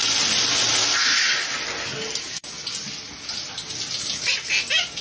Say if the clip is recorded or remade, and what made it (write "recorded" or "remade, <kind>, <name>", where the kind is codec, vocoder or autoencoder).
recorded